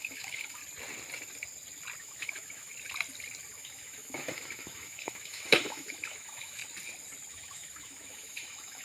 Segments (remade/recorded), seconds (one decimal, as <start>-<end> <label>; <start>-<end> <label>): 0.0-0.6 remade; 0.6-2.0 recorded; 2.0-2.7 remade; 2.7-3.5 recorded; 3.5-6.6 remade; 6.6-7.3 recorded; 7.3-8.8 remade